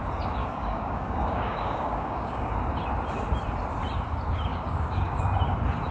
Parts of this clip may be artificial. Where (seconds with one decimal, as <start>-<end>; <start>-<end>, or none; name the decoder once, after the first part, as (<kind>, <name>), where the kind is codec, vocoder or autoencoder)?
0.4-2.5 (codec, DAC); 4.5-5.2